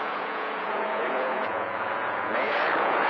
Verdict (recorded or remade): remade